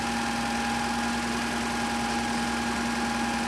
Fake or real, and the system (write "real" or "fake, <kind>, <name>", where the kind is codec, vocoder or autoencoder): real